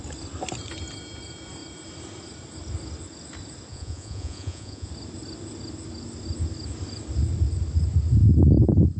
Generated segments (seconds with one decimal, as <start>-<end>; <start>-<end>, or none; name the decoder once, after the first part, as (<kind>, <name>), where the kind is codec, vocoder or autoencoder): 3.7-4.9 (vocoder, Vocos)